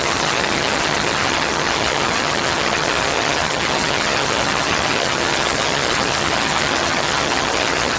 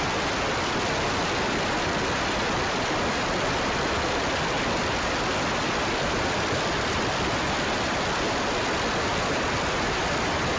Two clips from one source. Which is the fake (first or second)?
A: first